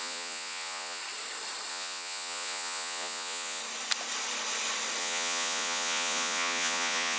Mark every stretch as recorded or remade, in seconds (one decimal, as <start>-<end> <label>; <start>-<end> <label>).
0.0-1.0 remade; 1.0-1.7 recorded; 1.7-3.6 remade; 3.6-5.0 recorded; 5.0-7.2 remade